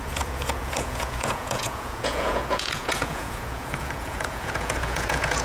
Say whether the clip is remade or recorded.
remade